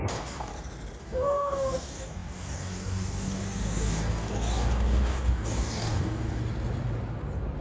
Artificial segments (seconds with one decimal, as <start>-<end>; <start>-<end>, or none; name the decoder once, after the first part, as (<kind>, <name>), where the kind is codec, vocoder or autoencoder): 0.0-0.5 (codec, DAC); 1.0-6.4